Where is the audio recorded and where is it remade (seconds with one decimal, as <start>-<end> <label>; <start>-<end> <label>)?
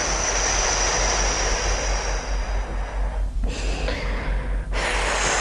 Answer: 0.0-5.4 recorded